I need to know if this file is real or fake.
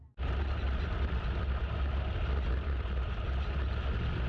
real